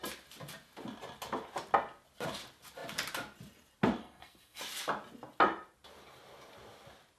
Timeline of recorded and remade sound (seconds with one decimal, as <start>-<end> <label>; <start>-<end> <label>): 0.0-4.0 recorded; 4.0-4.6 remade; 4.6-7.2 recorded